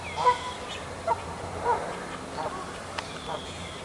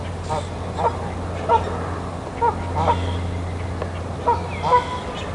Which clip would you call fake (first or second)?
first